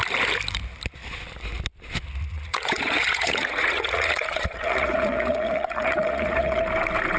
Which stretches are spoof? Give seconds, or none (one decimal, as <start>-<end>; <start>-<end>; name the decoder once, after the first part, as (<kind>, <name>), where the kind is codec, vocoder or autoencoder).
2.3-6.6 (vocoder, Vocos)